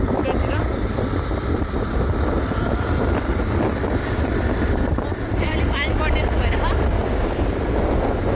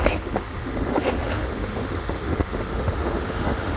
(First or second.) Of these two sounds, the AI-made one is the second